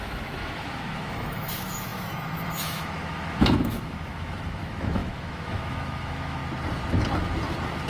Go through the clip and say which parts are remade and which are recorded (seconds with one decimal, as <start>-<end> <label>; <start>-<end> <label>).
0.0-6.4 remade; 6.4-7.9 recorded

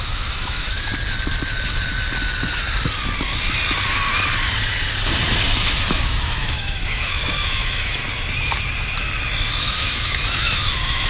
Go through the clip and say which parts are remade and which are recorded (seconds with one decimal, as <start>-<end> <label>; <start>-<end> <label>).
0.0-0.9 remade; 0.9-5.9 recorded; 5.9-8.0 remade; 8.0-9.6 recorded; 9.6-11.1 remade

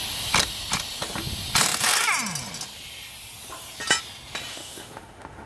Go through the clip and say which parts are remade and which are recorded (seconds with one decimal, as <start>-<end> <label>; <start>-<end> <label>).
0.0-4.5 recorded; 4.5-5.5 remade

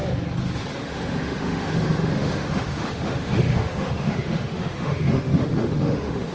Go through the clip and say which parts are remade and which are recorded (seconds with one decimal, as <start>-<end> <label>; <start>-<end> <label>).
0.0-0.8 recorded; 0.8-6.3 remade

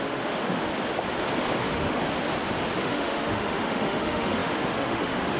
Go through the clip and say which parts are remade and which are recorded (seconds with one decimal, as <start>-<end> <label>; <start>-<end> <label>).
0.0-0.7 remade; 0.7-1.6 recorded; 1.6-2.0 remade; 2.0-2.8 recorded; 2.8-5.4 remade

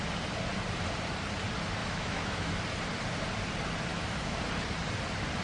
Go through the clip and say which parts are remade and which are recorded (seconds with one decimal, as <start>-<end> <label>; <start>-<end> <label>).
0.0-1.8 recorded; 1.8-2.5 remade; 2.5-3.9 recorded; 3.9-4.4 remade; 4.4-5.4 recorded

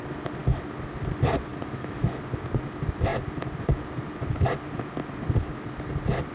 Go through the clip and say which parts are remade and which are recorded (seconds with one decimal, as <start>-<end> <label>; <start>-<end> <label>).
0.0-1.5 recorded; 1.5-2.2 remade; 2.2-6.3 recorded

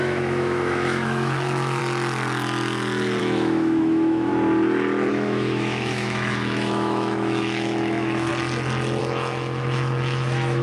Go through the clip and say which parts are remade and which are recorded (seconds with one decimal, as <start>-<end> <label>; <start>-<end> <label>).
0.0-1.8 remade; 1.8-3.2 recorded; 3.2-4.3 remade; 4.3-5.1 recorded; 5.1-8.3 remade; 8.3-9.0 recorded; 9.0-10.6 remade